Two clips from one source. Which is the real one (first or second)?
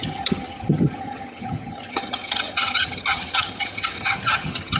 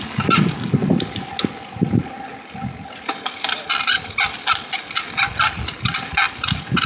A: second